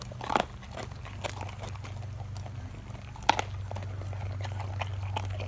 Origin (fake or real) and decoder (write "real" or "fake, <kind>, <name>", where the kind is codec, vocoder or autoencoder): real